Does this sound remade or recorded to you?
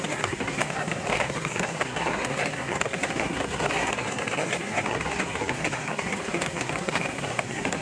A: remade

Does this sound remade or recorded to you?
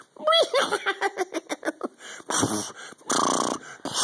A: recorded